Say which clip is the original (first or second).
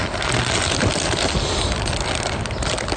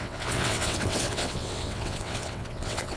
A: first